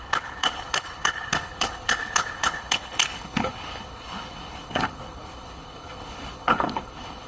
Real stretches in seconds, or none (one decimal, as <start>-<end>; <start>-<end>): none

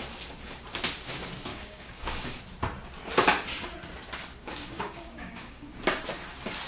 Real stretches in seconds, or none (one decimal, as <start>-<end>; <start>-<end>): 0.0-1.5; 2.4-4.4; 5.7-6.7

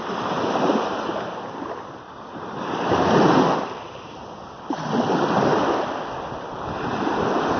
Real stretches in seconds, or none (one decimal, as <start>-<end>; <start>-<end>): 5.6-7.6

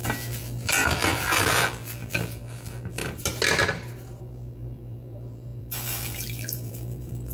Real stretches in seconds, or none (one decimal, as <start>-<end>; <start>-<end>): 3.0-4.2

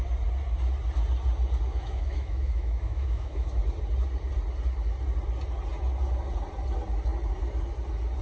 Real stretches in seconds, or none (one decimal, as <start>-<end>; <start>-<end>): 0.0-1.7; 3.6-8.2

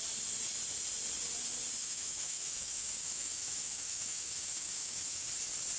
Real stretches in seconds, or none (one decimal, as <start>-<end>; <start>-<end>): 0.0-1.8; 5.3-5.8

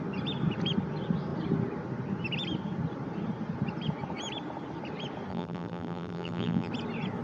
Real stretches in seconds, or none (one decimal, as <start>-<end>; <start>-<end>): 0.0-5.3; 6.7-7.2

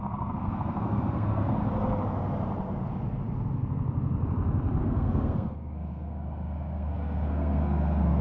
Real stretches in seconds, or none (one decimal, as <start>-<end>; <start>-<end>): 1.6-4.8